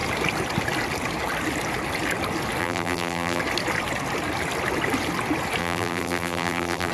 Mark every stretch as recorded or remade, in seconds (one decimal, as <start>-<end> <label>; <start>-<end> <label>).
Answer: 0.0-2.6 recorded; 2.6-3.4 remade; 3.4-5.6 recorded; 5.6-6.9 remade